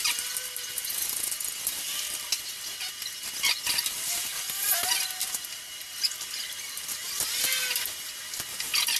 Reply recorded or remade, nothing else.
recorded